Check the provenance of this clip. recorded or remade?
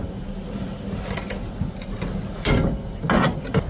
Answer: recorded